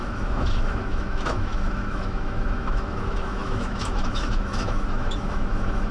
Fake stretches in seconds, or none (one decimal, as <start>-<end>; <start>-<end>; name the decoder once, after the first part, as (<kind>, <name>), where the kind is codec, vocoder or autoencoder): 0.0-5.9 (autoencoder, DAC-VAE)